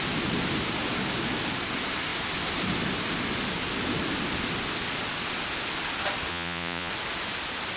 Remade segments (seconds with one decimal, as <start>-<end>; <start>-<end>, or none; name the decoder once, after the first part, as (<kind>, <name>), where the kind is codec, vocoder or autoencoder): 6.3-6.9 (vocoder, Vocos)